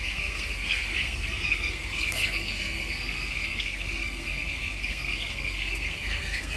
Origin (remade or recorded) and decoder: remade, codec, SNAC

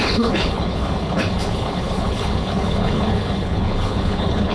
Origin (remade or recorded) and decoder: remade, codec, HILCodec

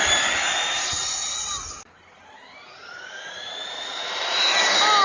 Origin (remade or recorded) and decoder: recorded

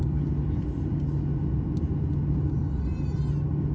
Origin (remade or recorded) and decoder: recorded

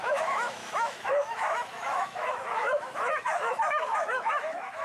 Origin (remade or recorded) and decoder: remade, autoencoder, DAC-VAE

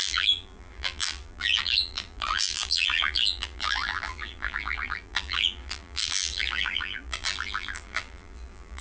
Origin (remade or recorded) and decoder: remade, vocoder, BigVGAN v2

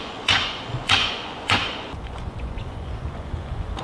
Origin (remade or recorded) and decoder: remade, vocoder, Vocos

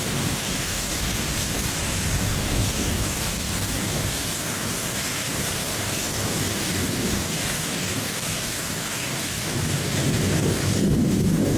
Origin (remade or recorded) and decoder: remade, codec, DAC